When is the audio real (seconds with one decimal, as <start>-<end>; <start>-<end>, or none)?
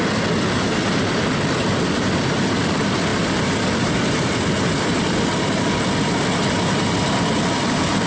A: 0.0-8.1